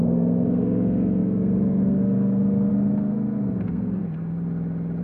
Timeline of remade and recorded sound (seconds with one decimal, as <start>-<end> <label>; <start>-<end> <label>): 0.0-4.0 remade; 4.0-5.0 recorded